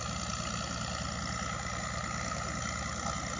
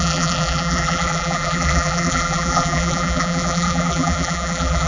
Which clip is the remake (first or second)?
second